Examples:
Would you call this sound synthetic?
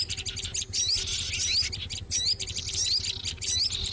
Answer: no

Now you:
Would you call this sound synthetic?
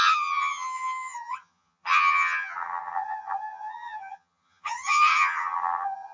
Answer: yes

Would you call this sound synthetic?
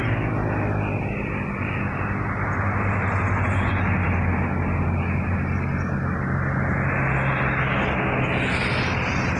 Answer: no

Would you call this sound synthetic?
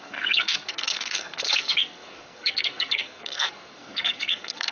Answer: yes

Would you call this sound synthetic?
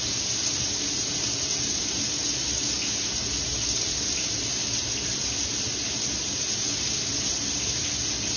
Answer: no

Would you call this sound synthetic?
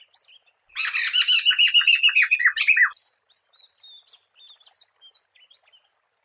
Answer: no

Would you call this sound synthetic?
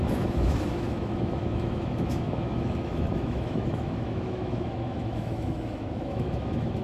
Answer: yes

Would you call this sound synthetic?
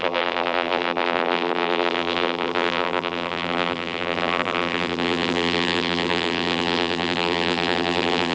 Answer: yes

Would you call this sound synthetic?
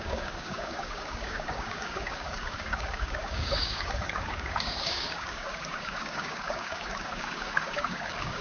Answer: yes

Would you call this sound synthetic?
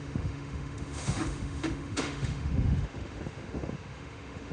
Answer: yes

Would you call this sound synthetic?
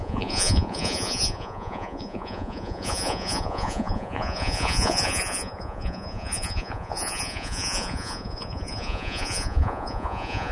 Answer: yes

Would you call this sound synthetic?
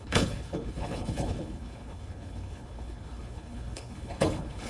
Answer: yes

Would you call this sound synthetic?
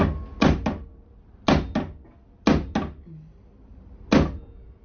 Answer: no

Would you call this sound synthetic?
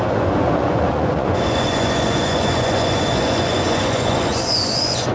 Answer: yes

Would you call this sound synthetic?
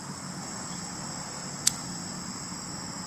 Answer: no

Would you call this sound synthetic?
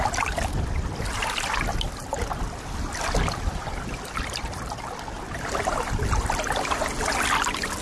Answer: no